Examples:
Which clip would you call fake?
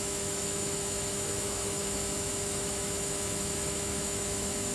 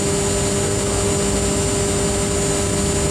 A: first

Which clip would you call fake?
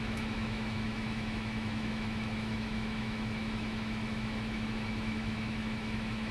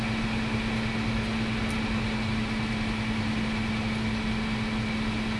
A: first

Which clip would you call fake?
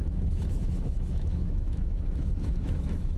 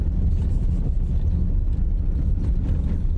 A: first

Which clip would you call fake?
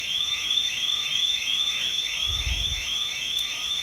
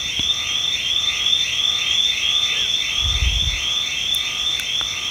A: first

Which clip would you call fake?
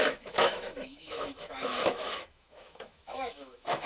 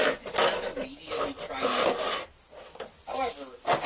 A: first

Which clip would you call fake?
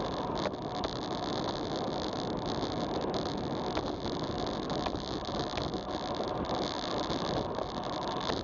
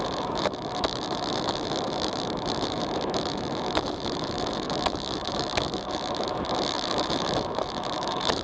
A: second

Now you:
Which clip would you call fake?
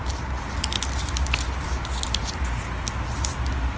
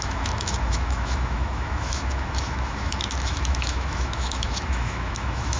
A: second